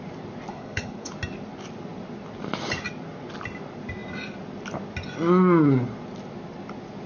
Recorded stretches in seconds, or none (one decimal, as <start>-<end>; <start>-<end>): 0.0-0.5; 1.1-7.1